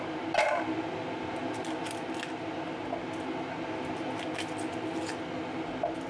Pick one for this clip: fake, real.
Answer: real